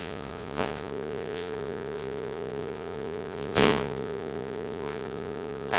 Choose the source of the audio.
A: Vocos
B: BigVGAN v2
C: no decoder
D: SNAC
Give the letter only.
A